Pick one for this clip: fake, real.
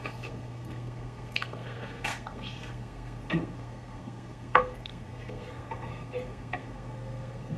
fake